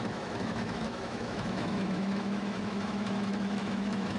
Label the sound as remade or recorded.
remade